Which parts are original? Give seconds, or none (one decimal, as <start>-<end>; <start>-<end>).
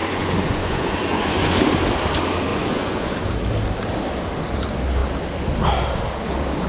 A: 1.6-2.5; 3.3-6.7